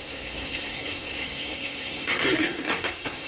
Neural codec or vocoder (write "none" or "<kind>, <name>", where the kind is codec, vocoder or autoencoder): codec, SNAC